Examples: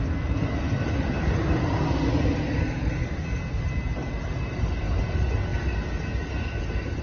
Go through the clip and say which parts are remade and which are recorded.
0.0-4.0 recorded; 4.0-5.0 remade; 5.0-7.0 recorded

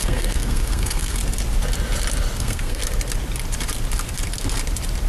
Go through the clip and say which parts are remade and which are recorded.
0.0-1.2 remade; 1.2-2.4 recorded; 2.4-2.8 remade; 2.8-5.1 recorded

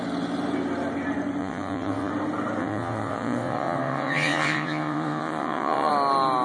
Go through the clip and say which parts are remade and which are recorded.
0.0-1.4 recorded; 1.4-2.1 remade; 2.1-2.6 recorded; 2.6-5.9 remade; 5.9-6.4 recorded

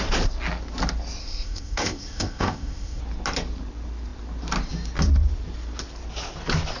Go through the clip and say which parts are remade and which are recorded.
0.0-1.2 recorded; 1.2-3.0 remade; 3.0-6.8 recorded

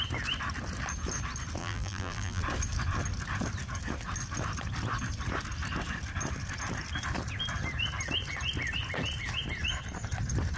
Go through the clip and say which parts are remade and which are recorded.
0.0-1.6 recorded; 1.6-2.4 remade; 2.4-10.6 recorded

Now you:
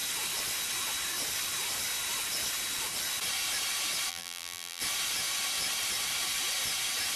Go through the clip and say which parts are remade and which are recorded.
0.0-4.1 recorded; 4.1-4.8 remade; 4.8-7.2 recorded

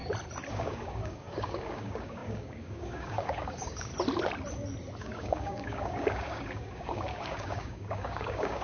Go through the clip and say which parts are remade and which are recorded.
0.0-0.5 recorded; 0.5-3.9 remade; 3.9-5.0 recorded; 5.0-8.6 remade

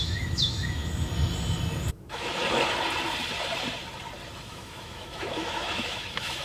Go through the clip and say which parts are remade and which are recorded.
0.0-0.8 remade; 0.8-1.9 recorded; 1.9-2.4 remade; 2.4-4.5 recorded; 4.5-6.4 remade